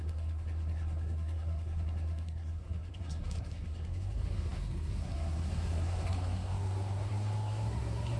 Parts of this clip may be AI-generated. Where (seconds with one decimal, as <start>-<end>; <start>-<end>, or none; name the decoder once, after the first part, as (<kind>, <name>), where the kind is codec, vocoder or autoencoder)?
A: 0.0-8.2 (codec, SNAC)